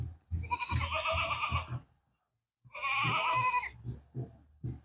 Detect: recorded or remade recorded